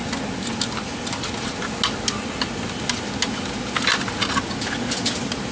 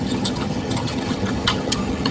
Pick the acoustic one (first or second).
first